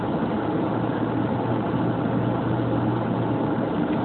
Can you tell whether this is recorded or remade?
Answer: recorded